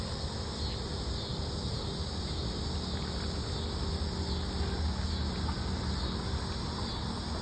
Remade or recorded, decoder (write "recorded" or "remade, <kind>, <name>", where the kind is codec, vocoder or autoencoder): recorded